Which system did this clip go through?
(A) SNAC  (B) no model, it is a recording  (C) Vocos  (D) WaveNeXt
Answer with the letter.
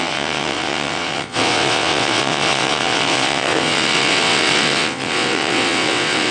D